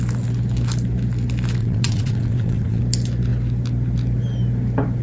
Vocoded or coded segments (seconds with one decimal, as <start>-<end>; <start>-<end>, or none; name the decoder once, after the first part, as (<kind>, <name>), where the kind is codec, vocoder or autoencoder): 1.6-2.8 (vocoder, WaveNeXt)